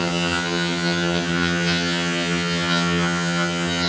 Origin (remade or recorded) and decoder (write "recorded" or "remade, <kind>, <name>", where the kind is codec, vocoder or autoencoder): remade, vocoder, HiFi-GAN